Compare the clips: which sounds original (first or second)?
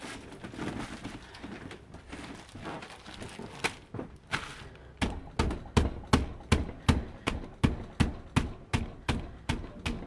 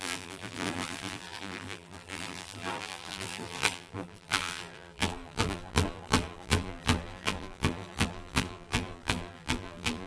first